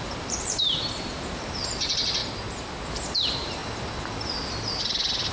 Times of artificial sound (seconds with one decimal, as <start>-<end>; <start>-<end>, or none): 0.0-2.2; 2.9-3.6